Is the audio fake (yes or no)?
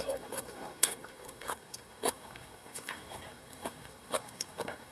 yes